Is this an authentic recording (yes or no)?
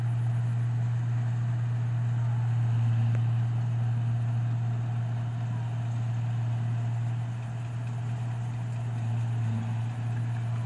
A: yes